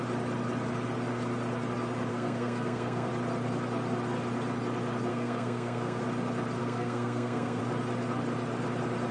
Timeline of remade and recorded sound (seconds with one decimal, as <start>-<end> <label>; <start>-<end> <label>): 0.0-2.1 recorded; 2.1-3.1 remade; 3.1-5.1 recorded; 5.1-6.0 remade; 6.0-6.6 recorded; 6.6-7.6 remade; 7.6-9.1 recorded